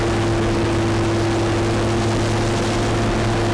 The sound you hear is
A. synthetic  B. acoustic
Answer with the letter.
B